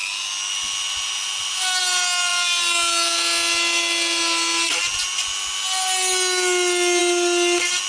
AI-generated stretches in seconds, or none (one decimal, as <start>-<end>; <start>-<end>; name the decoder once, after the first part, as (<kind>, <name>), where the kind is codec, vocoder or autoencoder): none

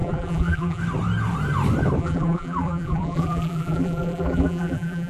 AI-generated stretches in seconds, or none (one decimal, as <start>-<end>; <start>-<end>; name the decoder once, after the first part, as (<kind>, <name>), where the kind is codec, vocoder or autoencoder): 0.0-0.8 (vocoder, BigVGAN v2); 2.0-5.1

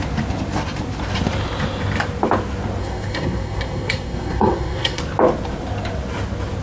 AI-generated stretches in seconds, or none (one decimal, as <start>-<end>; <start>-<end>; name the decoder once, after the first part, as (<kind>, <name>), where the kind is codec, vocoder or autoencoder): 2.8-5.0 (codec, SNAC)

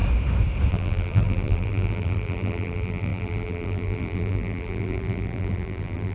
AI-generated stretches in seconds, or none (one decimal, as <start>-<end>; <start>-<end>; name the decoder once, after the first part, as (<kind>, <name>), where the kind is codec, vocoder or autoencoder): 0.7-6.1 (vocoder, BigVGAN v2)